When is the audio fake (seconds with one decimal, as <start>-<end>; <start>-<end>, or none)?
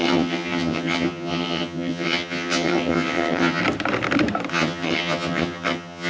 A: 0.0-3.6; 4.5-6.1